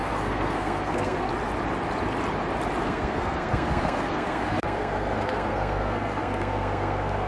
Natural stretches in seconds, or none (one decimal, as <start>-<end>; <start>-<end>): 1.3-2.8